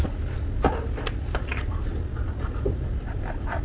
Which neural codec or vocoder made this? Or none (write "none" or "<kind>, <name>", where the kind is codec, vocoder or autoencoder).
none